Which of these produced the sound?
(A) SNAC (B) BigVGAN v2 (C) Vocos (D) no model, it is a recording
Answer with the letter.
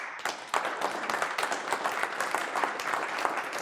D